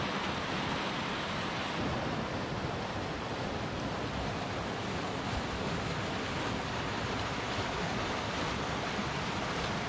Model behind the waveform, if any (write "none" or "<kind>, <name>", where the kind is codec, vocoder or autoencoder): none